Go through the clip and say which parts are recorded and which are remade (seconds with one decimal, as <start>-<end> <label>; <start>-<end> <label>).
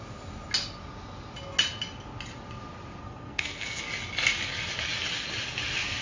0.0-3.0 recorded; 3.0-3.8 remade; 3.8-6.0 recorded